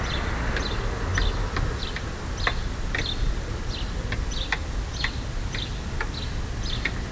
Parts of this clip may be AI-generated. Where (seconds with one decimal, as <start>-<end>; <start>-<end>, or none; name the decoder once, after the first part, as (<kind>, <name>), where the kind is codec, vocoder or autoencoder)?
none